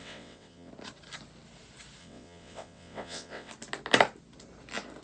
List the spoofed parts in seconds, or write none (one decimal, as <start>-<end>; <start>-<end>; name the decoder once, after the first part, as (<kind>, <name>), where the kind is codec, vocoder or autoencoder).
0.0-0.7 (vocoder, WaveNeXt); 2.0-3.5